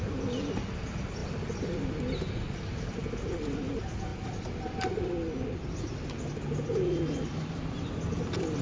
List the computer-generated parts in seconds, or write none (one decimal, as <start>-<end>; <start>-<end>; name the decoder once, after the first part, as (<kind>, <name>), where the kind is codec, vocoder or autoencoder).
none